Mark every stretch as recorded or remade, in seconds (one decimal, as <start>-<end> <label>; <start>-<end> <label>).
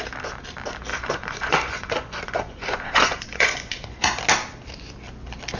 0.0-0.9 recorded; 0.9-4.2 remade; 4.2-5.6 recorded